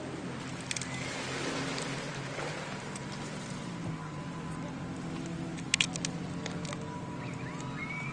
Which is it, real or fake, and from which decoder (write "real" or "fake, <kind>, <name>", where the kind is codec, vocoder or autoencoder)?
real